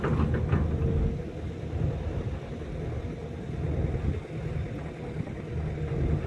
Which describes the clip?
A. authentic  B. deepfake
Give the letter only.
A